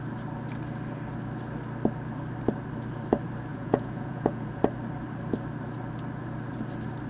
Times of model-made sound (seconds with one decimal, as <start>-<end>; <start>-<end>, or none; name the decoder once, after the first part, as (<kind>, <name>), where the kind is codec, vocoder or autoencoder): 3.5-4.6 (vocoder, Vocos)